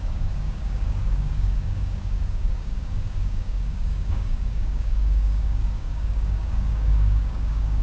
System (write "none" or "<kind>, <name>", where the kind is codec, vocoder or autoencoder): codec, DAC